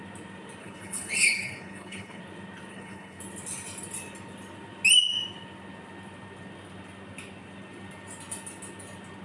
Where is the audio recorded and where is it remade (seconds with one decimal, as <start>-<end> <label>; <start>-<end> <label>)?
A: 0.0-0.6 recorded; 0.6-2.2 remade; 2.2-2.7 recorded; 2.7-3.2 remade; 3.2-9.2 recorded